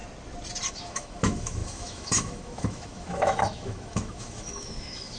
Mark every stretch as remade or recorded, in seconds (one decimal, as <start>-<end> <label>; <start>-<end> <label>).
0.0-0.7 recorded; 0.7-5.2 remade